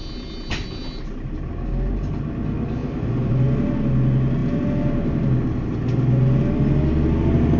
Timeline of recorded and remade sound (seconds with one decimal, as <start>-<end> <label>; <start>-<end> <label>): 0.0-2.8 recorded; 2.8-3.3 remade; 3.3-7.6 recorded